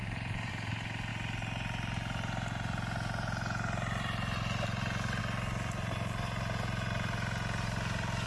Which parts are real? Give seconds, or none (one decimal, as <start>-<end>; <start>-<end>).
0.5-8.3